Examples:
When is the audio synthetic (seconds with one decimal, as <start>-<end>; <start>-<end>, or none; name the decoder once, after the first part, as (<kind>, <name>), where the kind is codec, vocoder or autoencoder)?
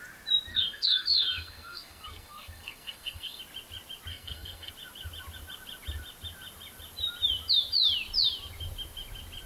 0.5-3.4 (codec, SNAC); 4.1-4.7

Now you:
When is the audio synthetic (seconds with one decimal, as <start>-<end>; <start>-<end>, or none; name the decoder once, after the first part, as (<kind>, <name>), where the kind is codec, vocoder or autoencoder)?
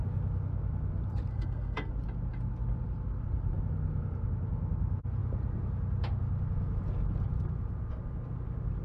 1.3-1.9 (codec, SNAC)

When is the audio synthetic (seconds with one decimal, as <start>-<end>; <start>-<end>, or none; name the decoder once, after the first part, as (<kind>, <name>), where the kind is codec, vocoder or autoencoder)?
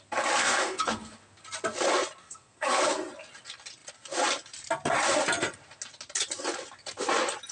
0.4-1.2 (codec, SNAC); 2.2-2.8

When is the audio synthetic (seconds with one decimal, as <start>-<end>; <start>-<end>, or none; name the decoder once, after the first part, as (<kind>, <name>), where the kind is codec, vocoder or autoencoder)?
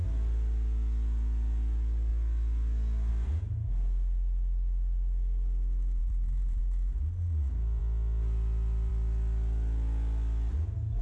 6.0-6.6 (vocoder, BigVGAN v2)